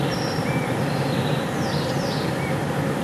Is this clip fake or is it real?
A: fake